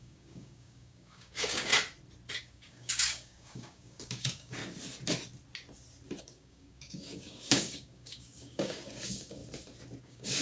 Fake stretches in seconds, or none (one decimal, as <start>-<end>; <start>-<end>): 0.0-1.7; 2.4-4.6; 6.2-9.4; 10.0-10.4